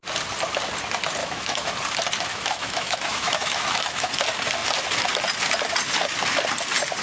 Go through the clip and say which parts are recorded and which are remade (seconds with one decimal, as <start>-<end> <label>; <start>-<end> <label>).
0.0-1.2 recorded; 1.2-1.7 remade; 1.7-2.3 recorded; 2.3-4.1 remade; 4.1-7.0 recorded